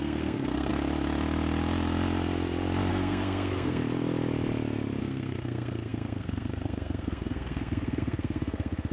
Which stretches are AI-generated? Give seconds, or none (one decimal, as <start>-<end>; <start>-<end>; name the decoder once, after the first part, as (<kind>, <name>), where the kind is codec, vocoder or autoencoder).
0.0-0.7 (codec, SNAC); 2.9-3.8; 5.0-8.9